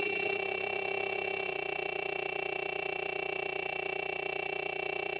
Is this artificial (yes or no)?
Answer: yes